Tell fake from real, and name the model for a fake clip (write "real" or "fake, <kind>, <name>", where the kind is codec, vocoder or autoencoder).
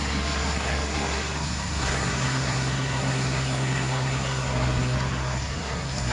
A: fake, codec, SNAC